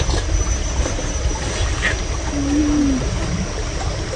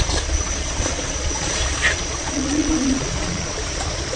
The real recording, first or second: first